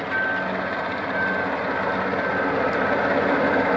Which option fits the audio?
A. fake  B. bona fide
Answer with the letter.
B